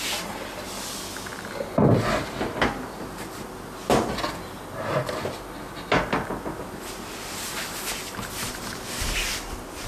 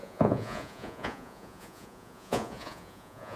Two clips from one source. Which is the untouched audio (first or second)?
first